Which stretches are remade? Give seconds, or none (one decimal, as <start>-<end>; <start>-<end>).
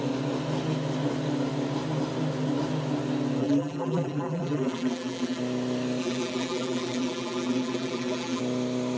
3.4-5.4; 6.0-8.4